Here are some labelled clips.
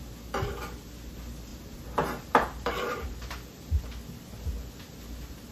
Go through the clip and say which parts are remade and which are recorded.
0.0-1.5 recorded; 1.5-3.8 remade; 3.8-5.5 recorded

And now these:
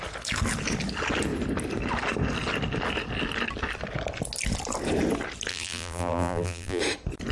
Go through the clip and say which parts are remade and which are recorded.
0.0-5.5 recorded; 5.5-6.8 remade; 6.8-7.3 recorded

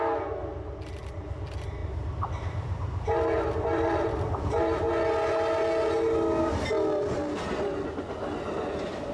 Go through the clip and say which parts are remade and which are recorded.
0.0-1.8 recorded; 1.8-4.9 remade; 4.9-9.1 recorded

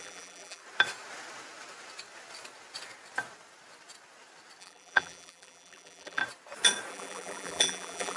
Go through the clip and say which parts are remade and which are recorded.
0.0-0.6 remade; 0.6-4.6 recorded; 4.6-6.2 remade; 6.2-6.9 recorded; 6.9-8.2 remade

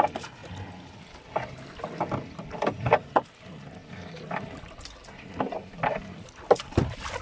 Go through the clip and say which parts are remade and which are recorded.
0.0-7.2 recorded

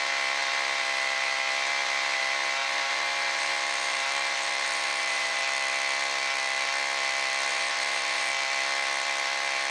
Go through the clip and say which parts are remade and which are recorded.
0.0-2.6 recorded; 2.6-5.4 remade; 5.4-7.5 recorded; 7.5-8.3 remade; 8.3-9.7 recorded

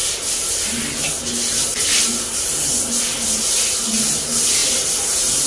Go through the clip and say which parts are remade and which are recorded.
0.0-1.7 recorded; 1.7-2.8 remade; 2.8-4.6 recorded; 4.6-5.5 remade

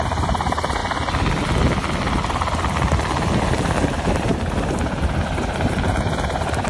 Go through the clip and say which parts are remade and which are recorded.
0.0-0.8 remade; 0.8-3.4 recorded; 3.4-6.7 remade